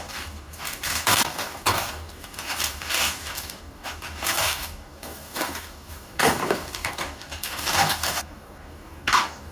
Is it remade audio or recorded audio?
remade